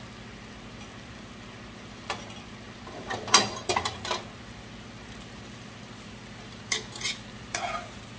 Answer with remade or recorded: recorded